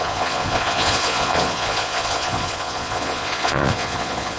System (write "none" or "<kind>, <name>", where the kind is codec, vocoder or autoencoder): vocoder, Vocos